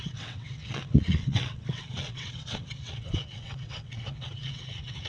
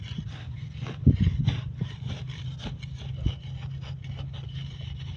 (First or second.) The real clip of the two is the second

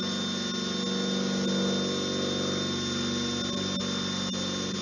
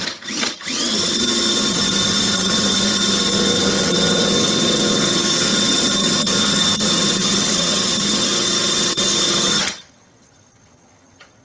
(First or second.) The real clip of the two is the first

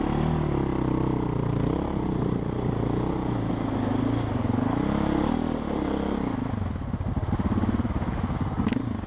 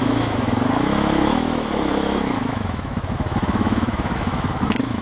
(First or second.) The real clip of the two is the first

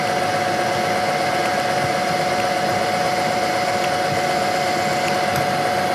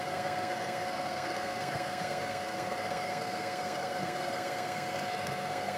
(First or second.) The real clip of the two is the first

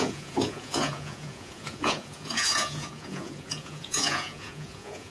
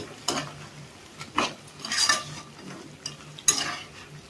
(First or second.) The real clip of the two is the second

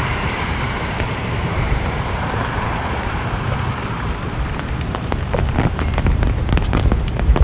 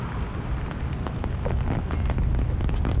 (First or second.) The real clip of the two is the second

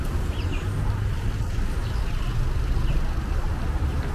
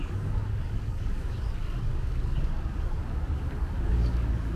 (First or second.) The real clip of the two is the first